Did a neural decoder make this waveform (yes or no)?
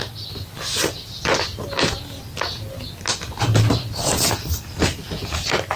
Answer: no